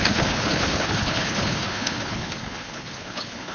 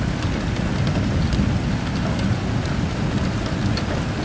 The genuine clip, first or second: second